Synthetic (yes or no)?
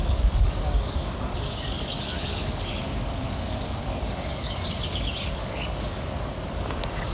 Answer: yes